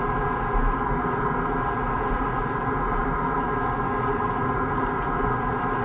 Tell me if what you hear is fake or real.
real